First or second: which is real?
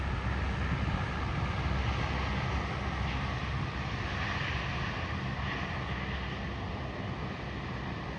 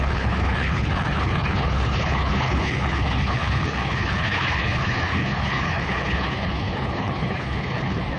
first